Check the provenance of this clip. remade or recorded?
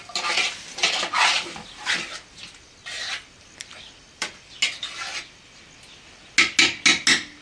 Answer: recorded